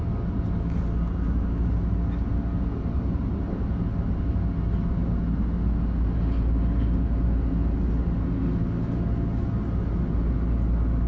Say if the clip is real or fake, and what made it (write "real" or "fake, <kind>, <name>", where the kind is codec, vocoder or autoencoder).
real